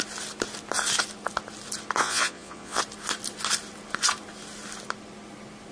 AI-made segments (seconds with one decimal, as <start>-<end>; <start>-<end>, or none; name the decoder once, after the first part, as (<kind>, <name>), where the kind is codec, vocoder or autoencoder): 2.0-2.8 (vocoder, Vocos)